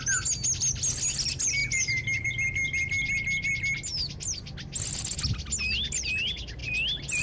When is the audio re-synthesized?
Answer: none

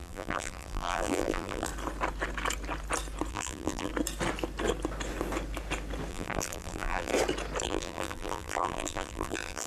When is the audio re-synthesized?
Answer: 0.0-1.7 (vocoder, BigVGAN v2); 3.3-3.9; 6.1-7.1; 7.6-9.7